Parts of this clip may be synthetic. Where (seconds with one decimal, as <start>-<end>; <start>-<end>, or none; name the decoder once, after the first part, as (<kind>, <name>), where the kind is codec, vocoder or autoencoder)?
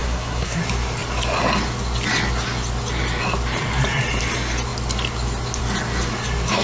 0.0-0.6 (codec, SNAC)